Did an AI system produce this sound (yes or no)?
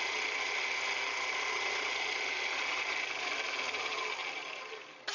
no